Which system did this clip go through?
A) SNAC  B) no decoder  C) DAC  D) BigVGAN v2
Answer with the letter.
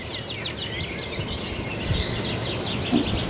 B